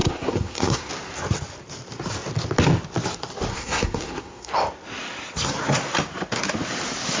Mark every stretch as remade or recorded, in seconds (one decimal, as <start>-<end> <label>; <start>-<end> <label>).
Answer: 0.0-0.9 remade; 0.9-3.5 recorded; 3.5-4.5 remade; 4.5-7.2 recorded